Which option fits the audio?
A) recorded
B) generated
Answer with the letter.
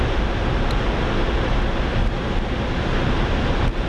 A